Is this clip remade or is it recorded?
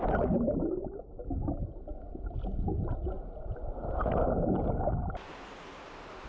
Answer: recorded